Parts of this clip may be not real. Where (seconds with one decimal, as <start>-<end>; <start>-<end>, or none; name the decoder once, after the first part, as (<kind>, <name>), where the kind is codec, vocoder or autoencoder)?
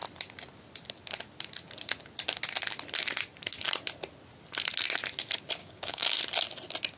5.6-6.2 (codec, DAC)